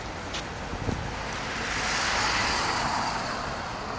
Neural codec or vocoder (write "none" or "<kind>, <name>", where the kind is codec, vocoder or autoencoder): none